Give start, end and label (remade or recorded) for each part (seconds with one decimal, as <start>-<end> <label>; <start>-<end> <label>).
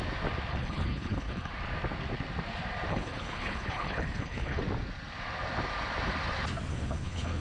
0.0-0.5 recorded; 0.5-1.5 remade; 1.5-2.9 recorded; 2.9-4.6 remade; 4.6-6.7 recorded; 6.7-7.4 remade